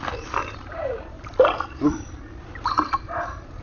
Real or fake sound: real